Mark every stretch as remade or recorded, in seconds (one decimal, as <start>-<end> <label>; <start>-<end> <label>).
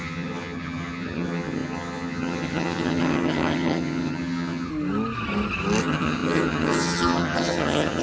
0.0-4.7 remade; 4.7-5.8 recorded; 5.8-8.0 remade